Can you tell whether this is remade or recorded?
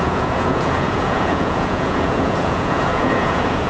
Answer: remade